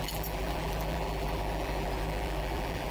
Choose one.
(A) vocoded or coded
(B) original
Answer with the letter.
A